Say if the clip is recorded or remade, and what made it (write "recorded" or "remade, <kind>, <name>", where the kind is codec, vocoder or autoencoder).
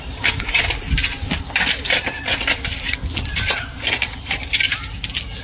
recorded